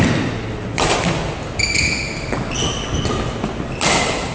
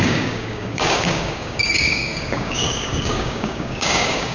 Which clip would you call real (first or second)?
first